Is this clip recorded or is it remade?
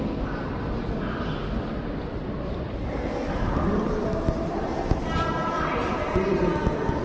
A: recorded